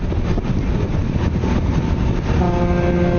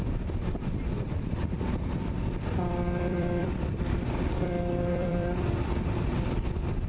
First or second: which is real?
first